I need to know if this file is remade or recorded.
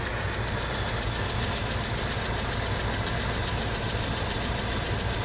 recorded